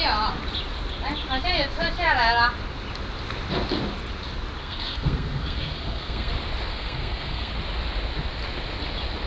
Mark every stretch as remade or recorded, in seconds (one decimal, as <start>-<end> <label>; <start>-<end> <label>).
0.0-4.6 recorded; 4.6-6.3 remade; 6.3-6.7 recorded; 6.7-7.5 remade; 7.5-9.3 recorded